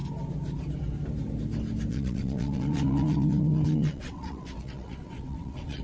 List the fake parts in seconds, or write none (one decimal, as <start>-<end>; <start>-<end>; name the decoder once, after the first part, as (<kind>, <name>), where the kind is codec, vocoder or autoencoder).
1.9-5.8 (vocoder, WaveNeXt)